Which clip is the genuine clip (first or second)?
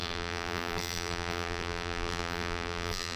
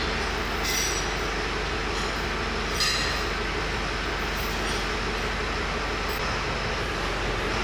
second